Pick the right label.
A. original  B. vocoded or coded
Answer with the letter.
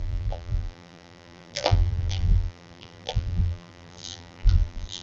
B